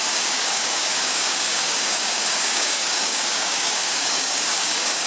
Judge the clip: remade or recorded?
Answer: remade